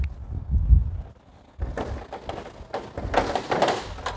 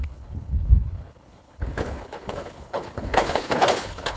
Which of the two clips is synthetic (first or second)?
second